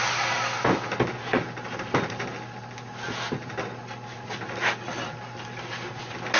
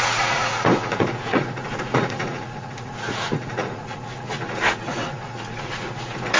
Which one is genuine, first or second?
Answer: first